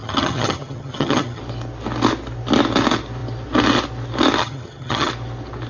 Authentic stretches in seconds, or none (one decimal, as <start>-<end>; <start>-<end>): 1.4-4.4; 5.1-5.7